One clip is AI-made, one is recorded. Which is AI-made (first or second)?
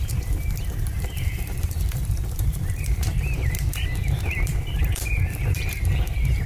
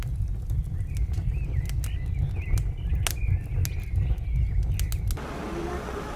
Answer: first